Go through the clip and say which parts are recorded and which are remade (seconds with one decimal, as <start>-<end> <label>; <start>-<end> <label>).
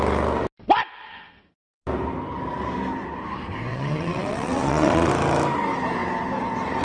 0.0-3.7 recorded; 3.7-5.1 remade; 5.1-6.8 recorded